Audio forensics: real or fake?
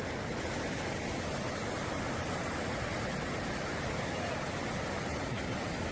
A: real